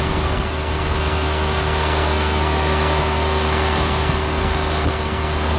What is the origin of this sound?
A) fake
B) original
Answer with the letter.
A